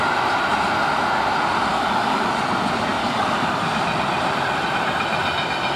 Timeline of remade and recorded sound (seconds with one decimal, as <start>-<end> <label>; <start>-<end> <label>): 0.0-1.7 recorded; 1.7-2.3 remade; 2.3-3.0 recorded; 3.0-3.6 remade; 3.6-5.8 recorded